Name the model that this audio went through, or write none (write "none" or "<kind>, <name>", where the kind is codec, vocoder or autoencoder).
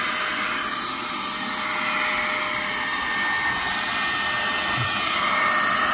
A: none